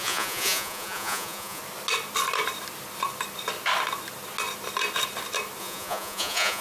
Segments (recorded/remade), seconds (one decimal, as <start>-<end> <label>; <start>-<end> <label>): 0.0-1.6 remade; 1.6-5.6 recorded; 5.6-6.6 remade